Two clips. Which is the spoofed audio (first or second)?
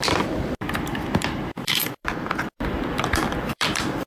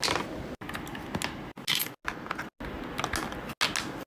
first